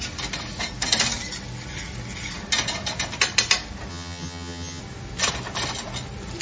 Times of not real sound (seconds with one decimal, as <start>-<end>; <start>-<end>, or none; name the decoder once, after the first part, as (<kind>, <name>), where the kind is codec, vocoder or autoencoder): 3.9-4.8 (vocoder, HiFi-GAN)